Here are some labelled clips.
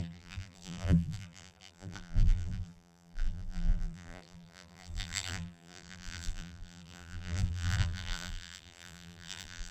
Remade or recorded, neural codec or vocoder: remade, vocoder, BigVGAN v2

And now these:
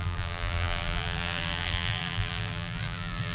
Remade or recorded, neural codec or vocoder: remade, vocoder, BigVGAN v2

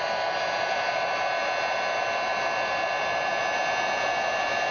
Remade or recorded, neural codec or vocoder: recorded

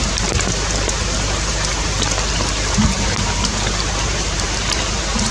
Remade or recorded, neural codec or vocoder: remade, vocoder, BigVGAN v2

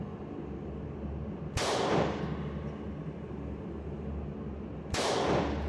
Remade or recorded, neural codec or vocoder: recorded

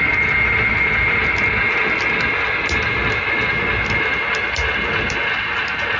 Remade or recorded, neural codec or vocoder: recorded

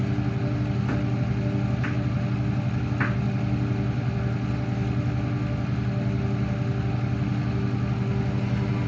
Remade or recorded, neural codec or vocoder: recorded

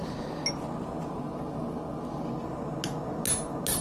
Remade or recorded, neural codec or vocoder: recorded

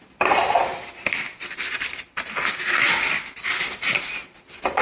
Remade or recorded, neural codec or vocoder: recorded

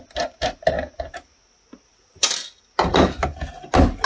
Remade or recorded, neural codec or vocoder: recorded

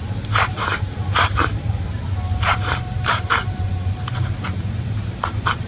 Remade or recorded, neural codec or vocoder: remade, vocoder, BigVGAN v2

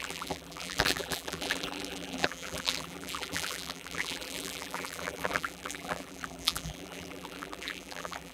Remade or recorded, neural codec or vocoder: remade, vocoder, BigVGAN v2